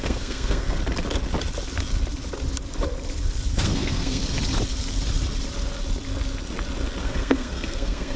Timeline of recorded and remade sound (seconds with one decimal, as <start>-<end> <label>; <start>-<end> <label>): 0.0-0.8 remade; 0.8-3.5 recorded; 3.5-4.2 remade; 4.2-7.0 recorded; 7.0-8.2 remade